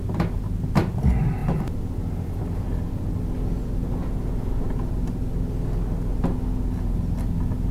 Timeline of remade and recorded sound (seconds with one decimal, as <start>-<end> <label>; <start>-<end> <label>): 0.0-7.7 recorded